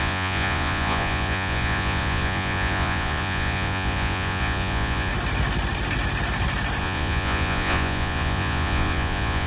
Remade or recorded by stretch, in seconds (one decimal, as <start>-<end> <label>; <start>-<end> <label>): 0.0-5.1 remade; 5.1-6.8 recorded; 6.8-9.5 remade